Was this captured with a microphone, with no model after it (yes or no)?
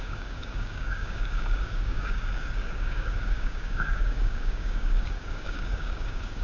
no